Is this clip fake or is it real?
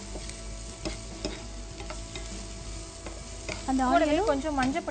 real